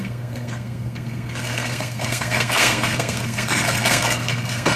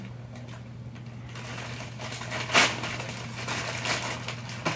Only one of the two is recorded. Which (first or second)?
second